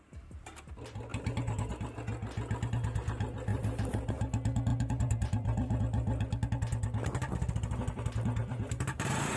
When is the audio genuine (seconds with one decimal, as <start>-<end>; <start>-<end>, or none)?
0.0-1.1; 1.7-3.5; 4.2-4.7; 5.8-8.4